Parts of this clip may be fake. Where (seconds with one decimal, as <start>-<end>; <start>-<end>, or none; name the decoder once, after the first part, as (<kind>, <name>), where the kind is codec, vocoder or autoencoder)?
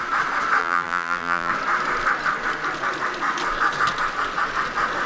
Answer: 0.6-1.5 (vocoder, BigVGAN v2)